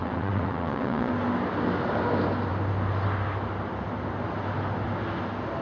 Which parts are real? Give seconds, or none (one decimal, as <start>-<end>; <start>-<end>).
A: 1.1-5.6